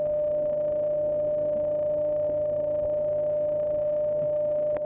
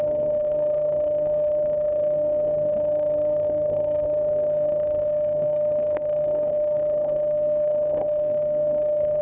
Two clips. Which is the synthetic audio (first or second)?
second